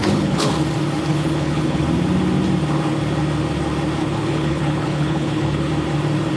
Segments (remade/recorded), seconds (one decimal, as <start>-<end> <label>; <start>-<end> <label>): 0.0-0.5 remade; 0.5-1.1 recorded; 1.1-1.8 remade; 1.8-4.0 recorded; 4.0-5.7 remade; 5.7-6.4 recorded